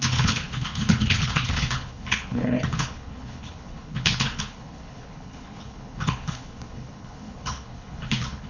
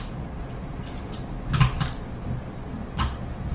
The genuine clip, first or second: second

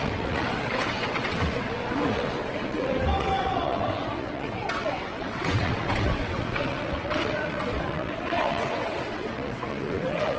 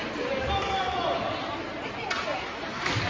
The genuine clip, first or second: second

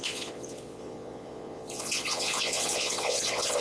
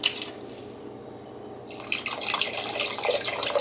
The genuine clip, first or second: second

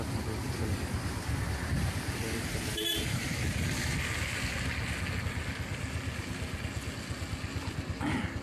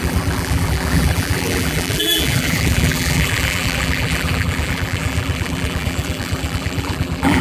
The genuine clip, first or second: first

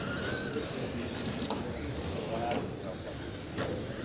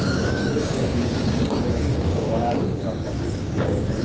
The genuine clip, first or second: first